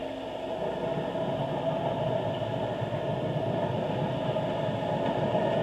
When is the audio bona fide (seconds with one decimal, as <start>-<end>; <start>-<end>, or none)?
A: 0.0-5.6